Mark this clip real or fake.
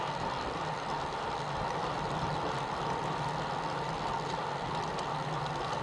real